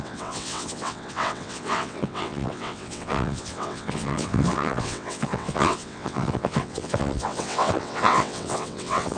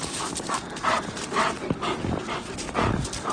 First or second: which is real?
second